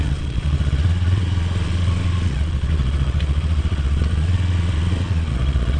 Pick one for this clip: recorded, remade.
remade